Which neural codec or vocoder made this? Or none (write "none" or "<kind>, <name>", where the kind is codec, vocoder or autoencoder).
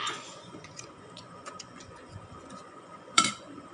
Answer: vocoder, Vocos